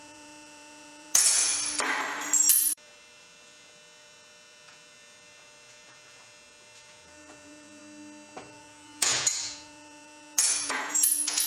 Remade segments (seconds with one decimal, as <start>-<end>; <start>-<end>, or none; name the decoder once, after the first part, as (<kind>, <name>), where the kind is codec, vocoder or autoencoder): 0.0-1.5 (vocoder, Vocos); 2.7-7.8; 8.5-11.5